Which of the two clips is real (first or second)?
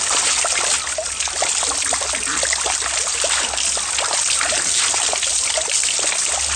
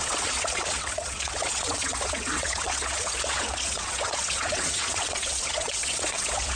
first